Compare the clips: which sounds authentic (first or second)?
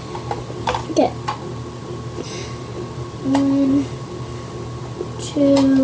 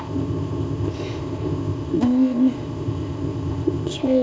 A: first